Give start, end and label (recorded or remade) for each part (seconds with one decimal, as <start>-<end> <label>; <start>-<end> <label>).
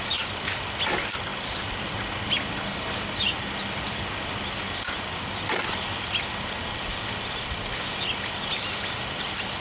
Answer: 0.0-9.6 recorded